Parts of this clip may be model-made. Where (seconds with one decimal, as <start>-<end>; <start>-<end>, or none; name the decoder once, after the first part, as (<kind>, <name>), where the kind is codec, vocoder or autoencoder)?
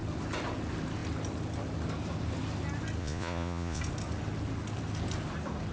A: 3.0-3.8 (vocoder, Vocos)